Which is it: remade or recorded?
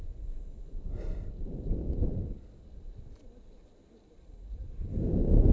recorded